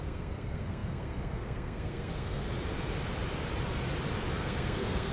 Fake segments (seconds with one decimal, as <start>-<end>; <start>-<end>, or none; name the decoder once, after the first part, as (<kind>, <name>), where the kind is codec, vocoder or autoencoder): 0.0-2.4 (codec, SNAC); 4.3-5.1